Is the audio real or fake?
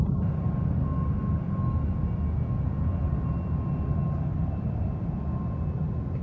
real